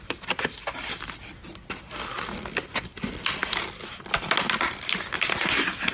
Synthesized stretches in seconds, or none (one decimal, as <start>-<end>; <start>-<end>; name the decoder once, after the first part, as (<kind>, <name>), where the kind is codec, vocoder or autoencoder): none